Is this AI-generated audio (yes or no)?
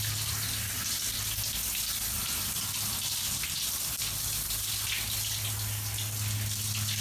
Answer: no